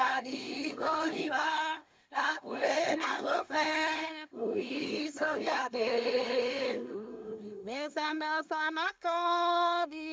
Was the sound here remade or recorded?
remade